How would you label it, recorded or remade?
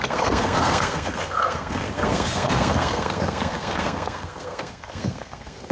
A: remade